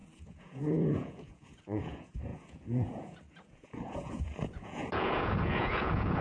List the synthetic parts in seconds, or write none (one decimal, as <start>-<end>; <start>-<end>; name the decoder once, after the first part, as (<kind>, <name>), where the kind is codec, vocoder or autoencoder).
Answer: 0.0-6.2 (vocoder, Vocos)